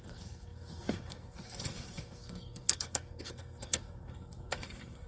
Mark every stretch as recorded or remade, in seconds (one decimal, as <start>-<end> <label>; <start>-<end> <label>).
0.0-5.1 remade